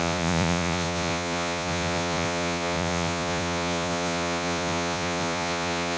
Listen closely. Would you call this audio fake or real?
fake